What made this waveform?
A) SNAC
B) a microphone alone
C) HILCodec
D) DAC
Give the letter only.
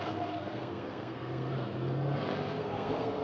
A